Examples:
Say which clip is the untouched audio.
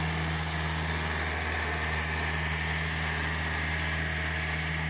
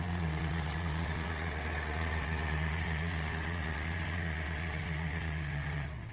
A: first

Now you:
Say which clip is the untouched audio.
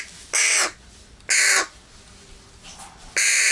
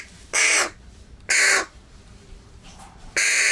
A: first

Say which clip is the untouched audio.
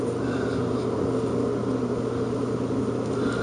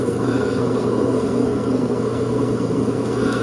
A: first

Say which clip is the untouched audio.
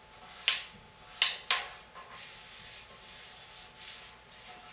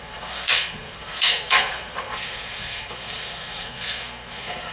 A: first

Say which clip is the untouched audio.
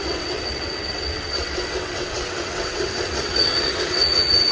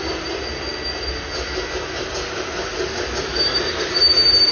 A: second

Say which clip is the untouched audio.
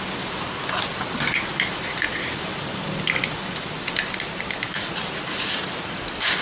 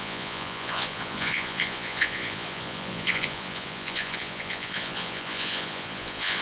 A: first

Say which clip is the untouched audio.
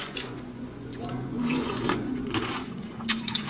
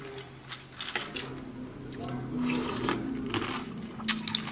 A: second